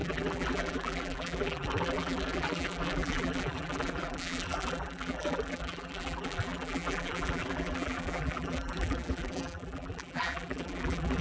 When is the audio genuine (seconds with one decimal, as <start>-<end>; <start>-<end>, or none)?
none